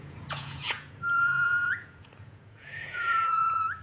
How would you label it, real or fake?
fake